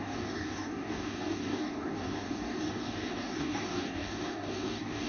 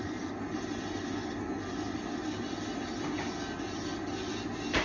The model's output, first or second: first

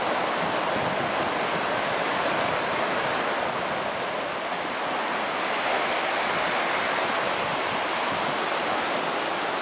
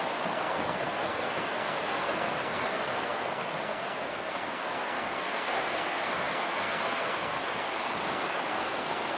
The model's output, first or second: second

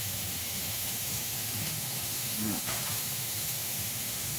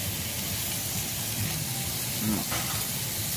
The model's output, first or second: first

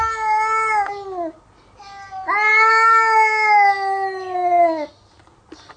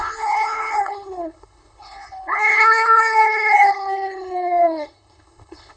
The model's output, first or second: second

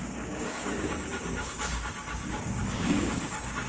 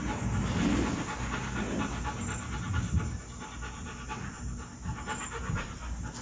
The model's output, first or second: first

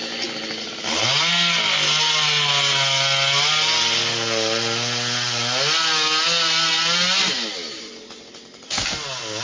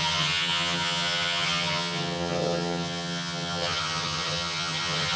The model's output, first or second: second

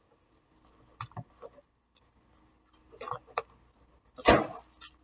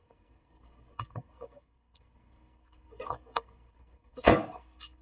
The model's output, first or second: second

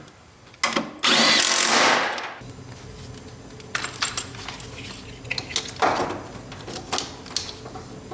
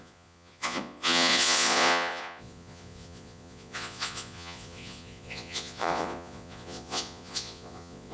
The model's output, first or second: second